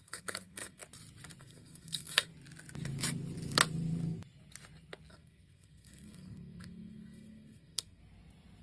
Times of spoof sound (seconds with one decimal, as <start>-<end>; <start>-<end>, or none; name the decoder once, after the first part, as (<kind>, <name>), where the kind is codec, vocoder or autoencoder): 0.0-0.8 (codec, SNAC); 1.4-2.3; 5.1-8.0